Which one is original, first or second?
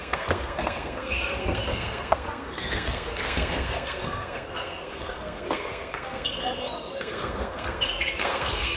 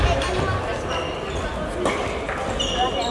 second